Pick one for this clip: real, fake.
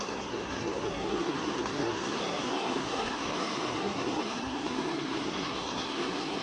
fake